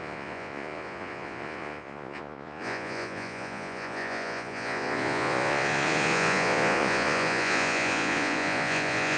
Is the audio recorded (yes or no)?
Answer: no